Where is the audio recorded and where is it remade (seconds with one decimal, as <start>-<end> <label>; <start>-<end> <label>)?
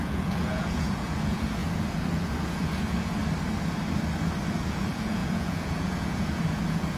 0.0-3.2 remade; 3.2-4.5 recorded; 4.5-7.0 remade